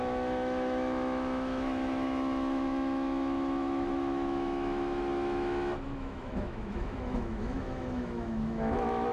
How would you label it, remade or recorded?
remade